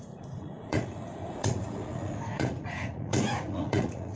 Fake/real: fake